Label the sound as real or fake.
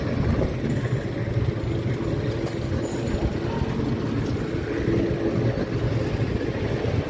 real